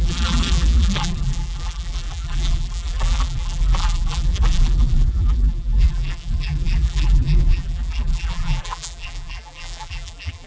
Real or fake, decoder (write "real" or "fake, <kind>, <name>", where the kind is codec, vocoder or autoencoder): fake, vocoder, BigVGAN v2